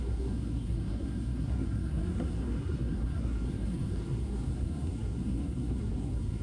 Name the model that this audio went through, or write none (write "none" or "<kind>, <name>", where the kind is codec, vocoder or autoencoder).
codec, SNAC